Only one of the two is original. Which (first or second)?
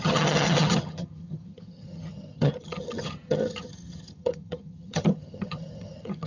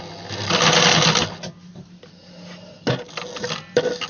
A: second